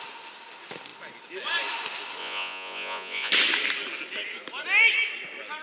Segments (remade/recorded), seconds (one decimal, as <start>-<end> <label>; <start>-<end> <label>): 0.0-2.2 recorded; 2.2-3.3 remade; 3.3-5.6 recorded